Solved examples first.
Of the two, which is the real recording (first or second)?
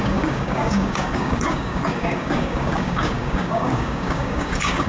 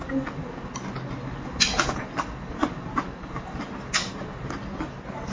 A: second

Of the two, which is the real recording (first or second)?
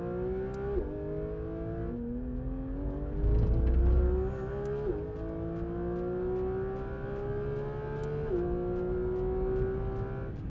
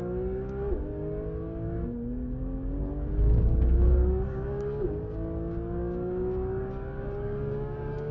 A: first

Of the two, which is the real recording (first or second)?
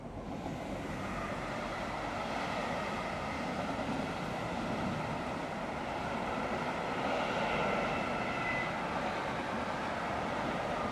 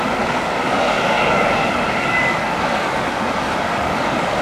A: first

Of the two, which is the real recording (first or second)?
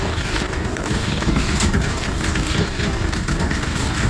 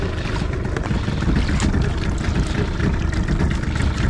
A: second